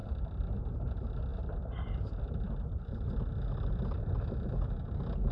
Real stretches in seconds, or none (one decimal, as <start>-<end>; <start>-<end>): 0.0-5.3

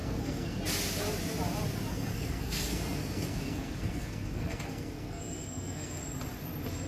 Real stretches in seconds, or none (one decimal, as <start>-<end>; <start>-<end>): 0.6-1.9; 6.0-6.9

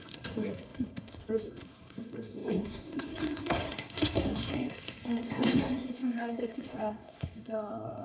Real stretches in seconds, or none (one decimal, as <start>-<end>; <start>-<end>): none

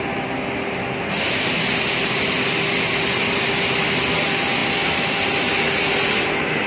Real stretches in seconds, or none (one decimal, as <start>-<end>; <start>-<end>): 0.0-6.7

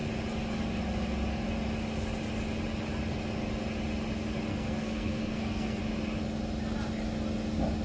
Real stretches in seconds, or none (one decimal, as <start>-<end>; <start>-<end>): 0.0-4.5; 5.8-7.8

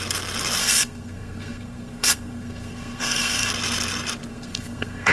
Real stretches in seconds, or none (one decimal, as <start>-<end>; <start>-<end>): 0.0-0.6; 3.5-4.3